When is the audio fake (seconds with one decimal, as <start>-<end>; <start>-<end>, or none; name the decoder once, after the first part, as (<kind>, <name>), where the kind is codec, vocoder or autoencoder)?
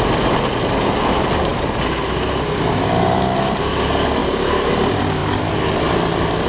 4.2-4.7 (vocoder, BigVGAN v2)